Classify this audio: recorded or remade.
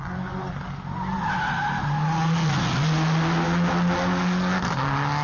recorded